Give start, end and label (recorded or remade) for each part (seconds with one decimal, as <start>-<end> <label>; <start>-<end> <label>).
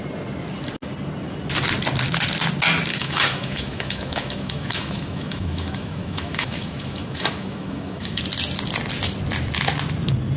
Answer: 0.0-2.9 recorded; 2.9-8.2 remade; 8.2-10.4 recorded